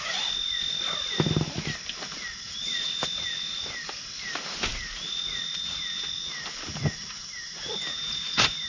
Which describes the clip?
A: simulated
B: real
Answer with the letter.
B